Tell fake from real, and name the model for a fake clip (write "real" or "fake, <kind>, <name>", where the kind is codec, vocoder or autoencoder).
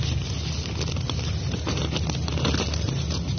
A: fake, vocoder, BigVGAN v2